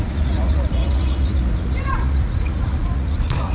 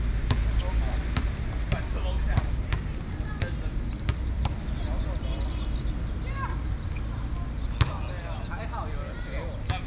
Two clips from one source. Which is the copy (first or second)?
first